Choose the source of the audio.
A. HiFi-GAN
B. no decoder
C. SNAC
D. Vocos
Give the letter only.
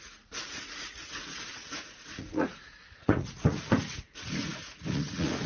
D